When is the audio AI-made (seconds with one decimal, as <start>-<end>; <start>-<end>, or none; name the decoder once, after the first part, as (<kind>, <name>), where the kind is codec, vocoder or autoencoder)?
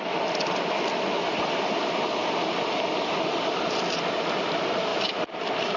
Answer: none